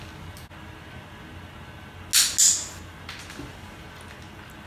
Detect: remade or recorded recorded